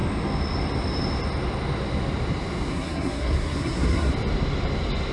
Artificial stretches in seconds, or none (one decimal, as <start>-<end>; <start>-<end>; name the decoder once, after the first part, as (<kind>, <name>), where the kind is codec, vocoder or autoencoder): 2.7-4.1 (codec, SNAC)